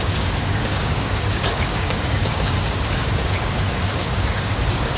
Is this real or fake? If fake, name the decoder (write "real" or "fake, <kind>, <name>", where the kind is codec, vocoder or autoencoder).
fake, codec, DAC